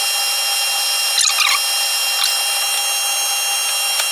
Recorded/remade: recorded